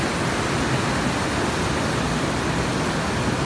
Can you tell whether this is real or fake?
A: real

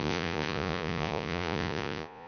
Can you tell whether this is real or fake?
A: fake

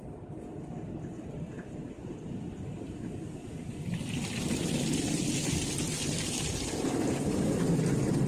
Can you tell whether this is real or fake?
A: real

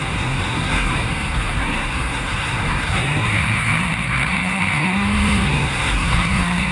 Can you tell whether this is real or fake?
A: fake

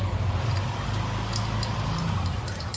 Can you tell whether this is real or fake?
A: real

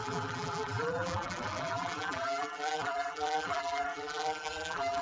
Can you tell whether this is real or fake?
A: fake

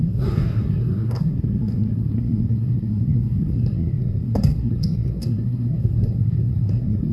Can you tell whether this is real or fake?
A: fake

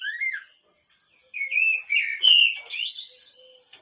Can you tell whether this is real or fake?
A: real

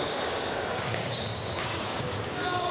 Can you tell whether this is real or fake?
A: fake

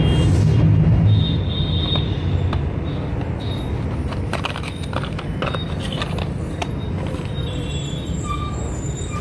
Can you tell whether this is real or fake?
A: real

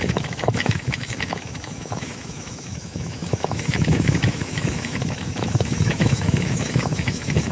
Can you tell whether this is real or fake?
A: fake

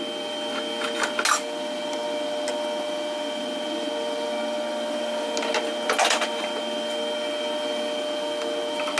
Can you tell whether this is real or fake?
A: real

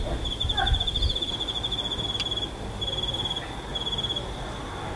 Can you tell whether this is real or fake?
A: real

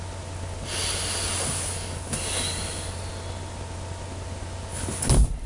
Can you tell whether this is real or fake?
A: real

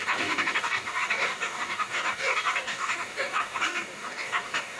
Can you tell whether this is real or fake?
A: fake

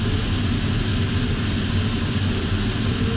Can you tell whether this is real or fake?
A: real